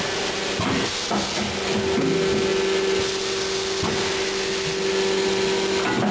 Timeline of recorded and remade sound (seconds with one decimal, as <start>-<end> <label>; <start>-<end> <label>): 0.0-6.1 recorded

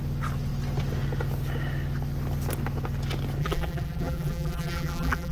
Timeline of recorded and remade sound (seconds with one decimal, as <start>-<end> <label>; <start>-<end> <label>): 0.0-3.4 recorded; 3.4-5.3 remade

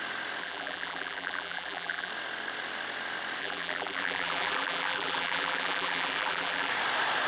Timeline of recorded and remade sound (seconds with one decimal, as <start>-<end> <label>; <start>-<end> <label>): 0.0-0.4 recorded; 0.4-2.1 remade; 2.1-3.4 recorded; 3.4-6.7 remade; 6.7-7.3 recorded

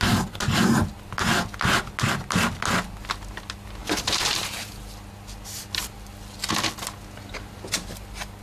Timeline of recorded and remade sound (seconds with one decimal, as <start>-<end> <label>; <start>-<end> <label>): 0.0-3.8 recorded; 3.8-4.7 remade; 4.7-8.4 recorded